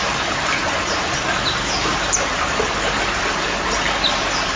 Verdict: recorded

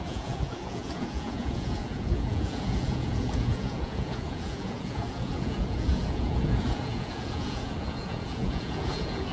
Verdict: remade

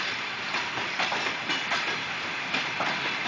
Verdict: remade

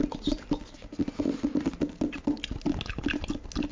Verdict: recorded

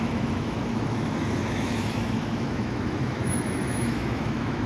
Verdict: remade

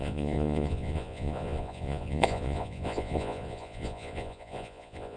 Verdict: remade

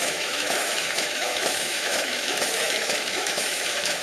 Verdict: remade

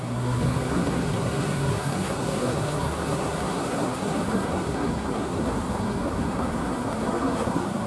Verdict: remade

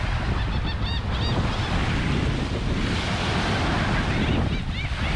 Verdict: recorded